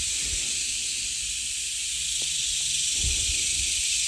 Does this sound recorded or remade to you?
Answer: recorded